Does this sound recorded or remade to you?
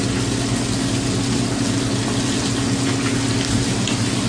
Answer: recorded